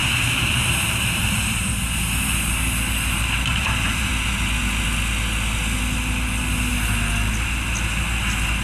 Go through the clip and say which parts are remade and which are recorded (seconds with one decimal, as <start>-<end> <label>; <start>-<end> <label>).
0.0-1.7 remade; 1.7-3.5 recorded; 3.5-4.1 remade; 4.1-8.6 recorded